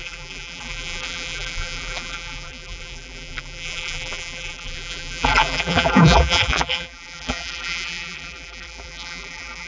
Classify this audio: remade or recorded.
remade